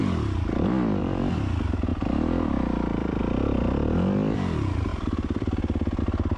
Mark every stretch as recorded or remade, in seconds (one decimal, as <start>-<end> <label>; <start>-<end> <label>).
0.0-1.9 recorded; 1.9-3.2 remade; 3.2-4.9 recorded; 4.9-6.0 remade; 6.0-6.4 recorded